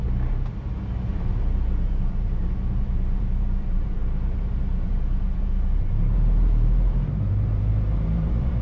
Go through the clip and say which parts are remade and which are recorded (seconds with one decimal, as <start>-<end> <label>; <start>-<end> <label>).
0.0-1.1 recorded; 1.1-8.6 remade